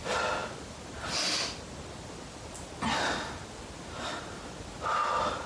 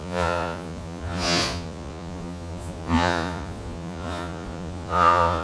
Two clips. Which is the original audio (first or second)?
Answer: first